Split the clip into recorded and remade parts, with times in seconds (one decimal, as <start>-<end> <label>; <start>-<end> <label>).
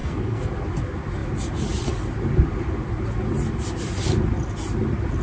0.0-0.5 remade; 0.5-5.2 recorded